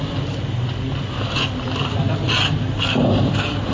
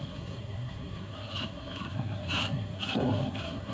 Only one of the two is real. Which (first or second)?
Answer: first